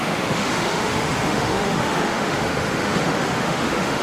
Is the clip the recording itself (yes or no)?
no